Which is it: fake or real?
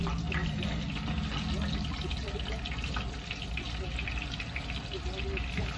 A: real